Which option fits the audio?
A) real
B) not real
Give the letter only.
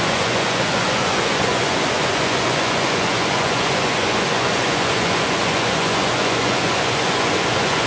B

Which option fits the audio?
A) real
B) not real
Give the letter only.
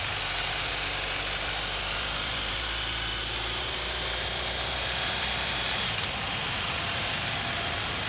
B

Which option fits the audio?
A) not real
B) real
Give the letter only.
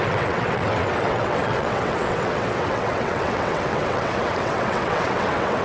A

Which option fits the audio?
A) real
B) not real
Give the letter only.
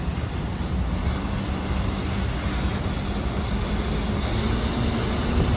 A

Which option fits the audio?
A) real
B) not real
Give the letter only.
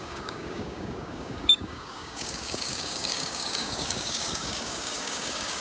B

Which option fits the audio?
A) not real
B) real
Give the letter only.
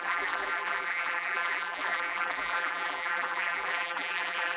A